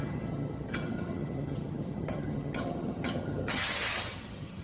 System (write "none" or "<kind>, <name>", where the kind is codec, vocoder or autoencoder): vocoder, HiFi-GAN